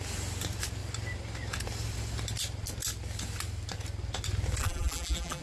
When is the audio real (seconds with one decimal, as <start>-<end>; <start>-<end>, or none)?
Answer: 0.0-4.6